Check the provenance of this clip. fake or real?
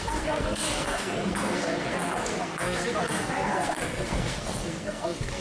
fake